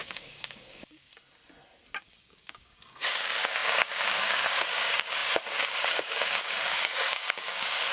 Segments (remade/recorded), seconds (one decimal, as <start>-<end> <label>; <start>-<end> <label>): 0.0-1.1 remade; 1.1-2.1 recorded; 2.1-7.9 remade